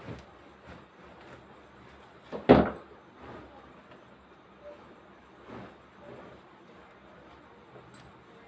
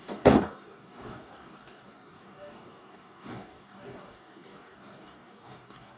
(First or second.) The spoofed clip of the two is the second